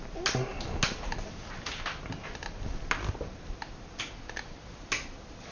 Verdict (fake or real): real